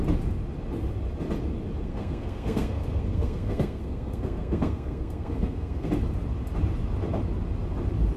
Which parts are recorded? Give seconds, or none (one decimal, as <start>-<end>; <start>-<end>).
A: 0.0-1.8; 5.9-8.2